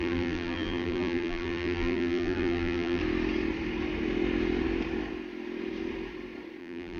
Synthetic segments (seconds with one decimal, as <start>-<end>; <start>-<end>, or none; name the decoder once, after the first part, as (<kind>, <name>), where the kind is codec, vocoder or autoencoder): 0.0-3.0 (vocoder, BigVGAN v2); 6.6-7.0